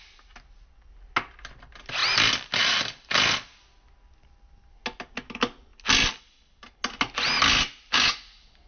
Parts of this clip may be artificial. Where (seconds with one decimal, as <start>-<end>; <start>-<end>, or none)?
none